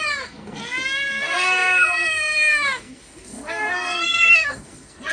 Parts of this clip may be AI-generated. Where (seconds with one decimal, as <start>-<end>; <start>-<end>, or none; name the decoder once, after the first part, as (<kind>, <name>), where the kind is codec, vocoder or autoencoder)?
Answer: 0.0-0.6 (codec, SNAC); 1.2-5.1